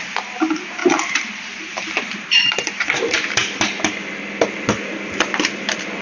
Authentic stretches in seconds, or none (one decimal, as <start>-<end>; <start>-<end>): 0.0-0.8; 2.5-6.0